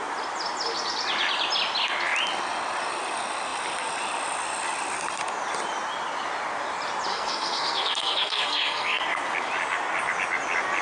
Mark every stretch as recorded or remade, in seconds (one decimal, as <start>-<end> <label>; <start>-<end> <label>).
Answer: 0.0-7.1 recorded; 7.1-9.0 remade; 9.0-10.8 recorded